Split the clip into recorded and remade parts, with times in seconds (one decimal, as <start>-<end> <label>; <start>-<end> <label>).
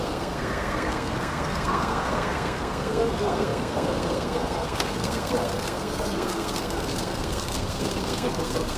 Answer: 0.0-8.8 remade